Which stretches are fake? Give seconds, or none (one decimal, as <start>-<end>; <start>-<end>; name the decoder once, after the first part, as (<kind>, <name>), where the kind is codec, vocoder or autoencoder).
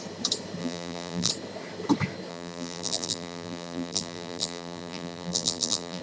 0.6-1.3 (vocoder, BigVGAN v2); 2.3-6.0